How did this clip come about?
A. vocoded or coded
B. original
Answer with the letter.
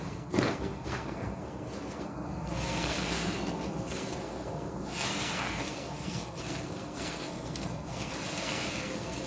A